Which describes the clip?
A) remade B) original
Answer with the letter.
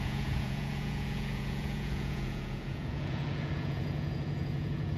A